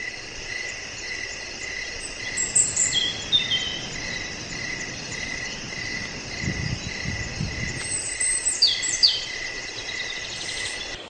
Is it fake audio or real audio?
fake